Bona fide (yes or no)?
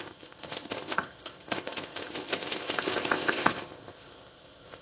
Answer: no